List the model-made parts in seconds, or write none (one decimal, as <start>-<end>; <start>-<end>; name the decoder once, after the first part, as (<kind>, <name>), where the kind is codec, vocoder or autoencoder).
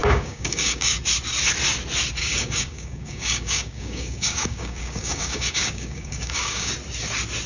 0.0-1.0 (codec, DAC); 2.2-6.7